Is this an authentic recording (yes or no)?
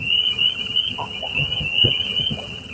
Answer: no